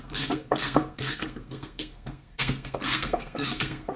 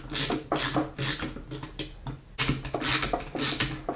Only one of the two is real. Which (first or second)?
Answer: second